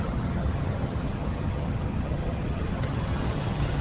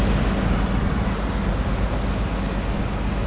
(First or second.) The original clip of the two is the second